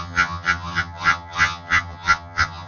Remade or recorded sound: remade